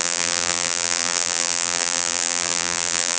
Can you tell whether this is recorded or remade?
remade